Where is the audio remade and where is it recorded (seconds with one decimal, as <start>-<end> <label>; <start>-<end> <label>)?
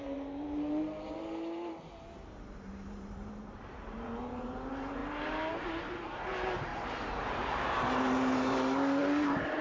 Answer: 0.0-9.6 remade